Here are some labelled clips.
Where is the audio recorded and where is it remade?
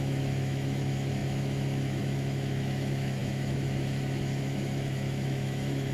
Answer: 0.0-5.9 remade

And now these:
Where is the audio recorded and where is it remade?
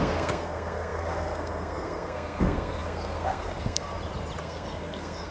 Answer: 0.0-3.9 remade; 3.9-4.4 recorded; 4.4-5.3 remade